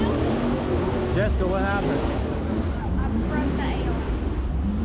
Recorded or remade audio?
recorded